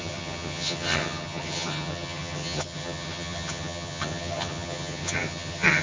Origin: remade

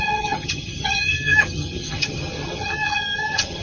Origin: remade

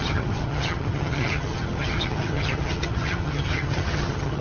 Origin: remade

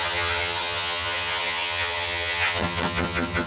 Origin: remade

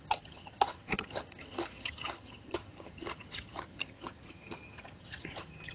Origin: remade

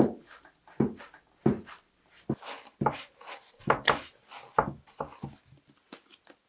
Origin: recorded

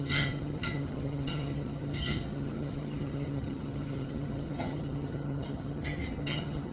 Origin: remade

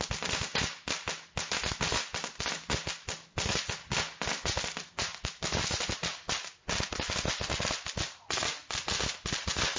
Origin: recorded